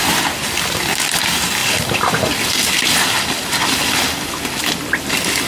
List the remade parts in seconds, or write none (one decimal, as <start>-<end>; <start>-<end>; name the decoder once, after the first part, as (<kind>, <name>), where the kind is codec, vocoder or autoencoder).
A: 0.0-1.0 (vocoder, BigVGAN v2); 1.6-2.4